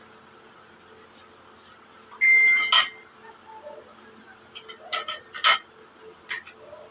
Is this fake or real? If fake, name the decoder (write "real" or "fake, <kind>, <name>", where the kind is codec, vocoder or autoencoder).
real